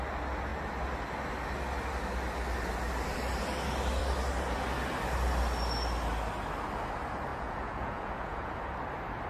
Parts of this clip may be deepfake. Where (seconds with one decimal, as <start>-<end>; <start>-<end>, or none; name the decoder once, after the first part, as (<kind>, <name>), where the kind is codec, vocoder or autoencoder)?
7.3-8.6 (vocoder, Vocos)